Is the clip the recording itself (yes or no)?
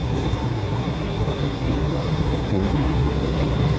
no